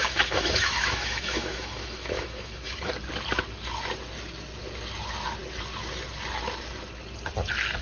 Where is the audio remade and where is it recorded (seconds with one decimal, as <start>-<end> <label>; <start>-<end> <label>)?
0.0-2.9 remade; 2.9-7.8 recorded